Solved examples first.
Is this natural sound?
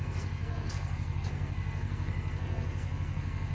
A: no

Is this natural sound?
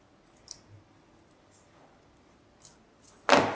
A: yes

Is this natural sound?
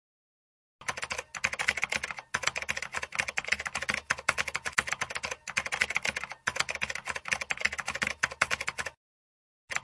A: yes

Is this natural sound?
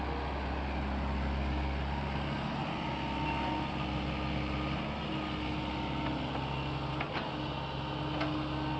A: yes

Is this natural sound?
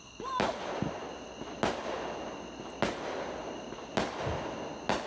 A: yes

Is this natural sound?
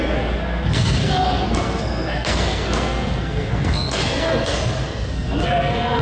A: no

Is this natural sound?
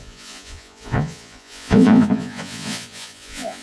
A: no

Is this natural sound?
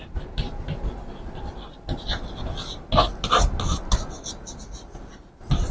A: yes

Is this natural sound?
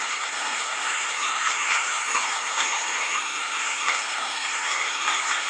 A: no